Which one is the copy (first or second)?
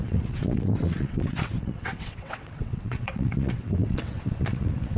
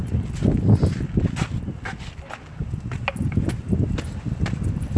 first